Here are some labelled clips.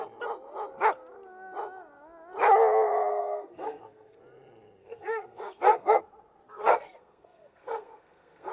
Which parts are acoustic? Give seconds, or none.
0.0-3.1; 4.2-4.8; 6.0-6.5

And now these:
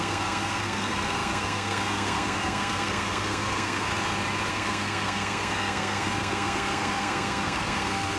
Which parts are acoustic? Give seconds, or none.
3.9-4.5

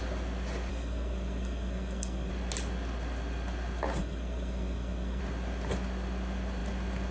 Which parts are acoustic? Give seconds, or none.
0.0-0.7; 2.3-4.0; 5.2-7.1

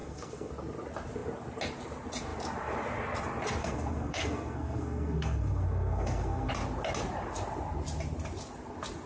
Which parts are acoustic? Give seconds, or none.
0.5-3.6; 6.5-9.1